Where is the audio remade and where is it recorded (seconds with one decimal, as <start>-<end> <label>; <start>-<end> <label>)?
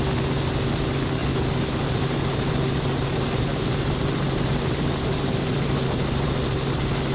0.0-1.2 recorded; 1.2-2.5 remade; 2.5-3.1 recorded; 3.1-6.5 remade; 6.5-7.1 recorded